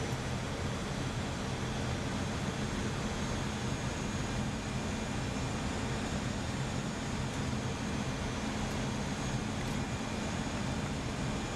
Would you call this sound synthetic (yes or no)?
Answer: no